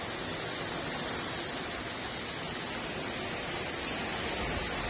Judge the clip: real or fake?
real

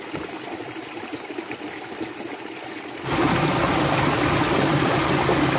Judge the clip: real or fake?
real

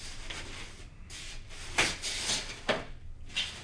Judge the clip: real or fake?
real